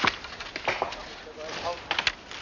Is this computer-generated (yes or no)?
no